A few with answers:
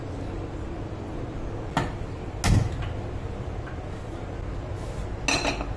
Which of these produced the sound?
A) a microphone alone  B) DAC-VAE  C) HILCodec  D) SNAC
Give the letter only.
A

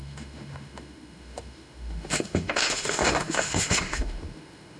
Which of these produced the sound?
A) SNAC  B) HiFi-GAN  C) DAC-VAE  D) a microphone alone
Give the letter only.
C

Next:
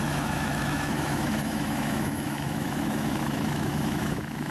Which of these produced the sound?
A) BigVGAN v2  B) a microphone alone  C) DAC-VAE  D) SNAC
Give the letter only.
C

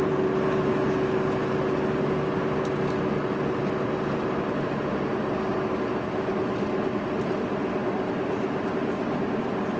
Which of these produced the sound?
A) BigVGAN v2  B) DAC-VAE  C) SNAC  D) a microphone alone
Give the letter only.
D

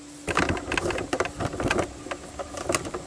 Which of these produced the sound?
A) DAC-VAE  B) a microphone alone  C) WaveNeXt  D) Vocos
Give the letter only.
B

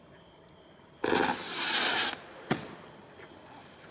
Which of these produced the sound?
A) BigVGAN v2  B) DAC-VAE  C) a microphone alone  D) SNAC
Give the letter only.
C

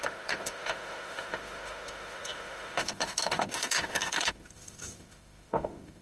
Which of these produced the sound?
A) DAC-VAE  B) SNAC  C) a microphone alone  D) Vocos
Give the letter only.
A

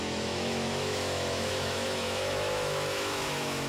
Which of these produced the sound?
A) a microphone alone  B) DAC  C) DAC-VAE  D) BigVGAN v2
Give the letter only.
C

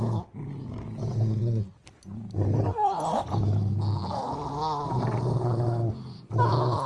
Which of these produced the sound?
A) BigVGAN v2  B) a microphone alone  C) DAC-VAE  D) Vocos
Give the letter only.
B